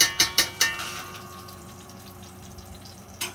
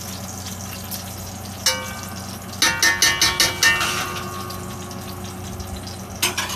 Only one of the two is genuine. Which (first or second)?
second